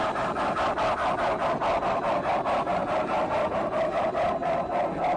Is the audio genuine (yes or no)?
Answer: yes